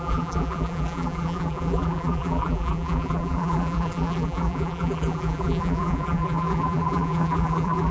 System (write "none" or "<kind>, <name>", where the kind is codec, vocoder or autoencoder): vocoder, BigVGAN v2